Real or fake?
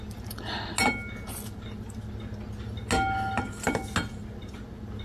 real